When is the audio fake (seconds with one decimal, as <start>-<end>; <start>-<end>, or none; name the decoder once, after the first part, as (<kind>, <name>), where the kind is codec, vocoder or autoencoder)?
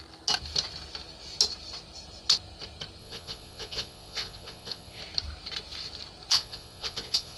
3.0-5.0 (vocoder, Vocos); 6.3-7.4